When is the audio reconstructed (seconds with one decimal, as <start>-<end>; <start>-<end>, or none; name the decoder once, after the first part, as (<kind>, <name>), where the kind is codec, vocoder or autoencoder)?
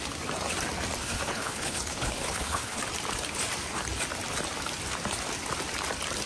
1.0-2.8 (codec, HILCodec)